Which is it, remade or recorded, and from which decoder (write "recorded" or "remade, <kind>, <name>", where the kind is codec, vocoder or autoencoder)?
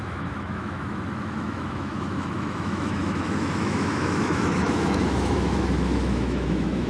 remade, autoencoder, DAC-VAE